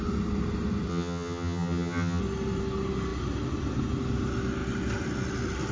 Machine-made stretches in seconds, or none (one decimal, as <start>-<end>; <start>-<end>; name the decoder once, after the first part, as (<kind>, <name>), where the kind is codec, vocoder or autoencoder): 0.9-2.2 (vocoder, HiFi-GAN)